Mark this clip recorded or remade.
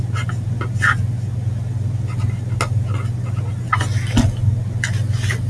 recorded